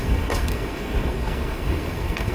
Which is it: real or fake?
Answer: fake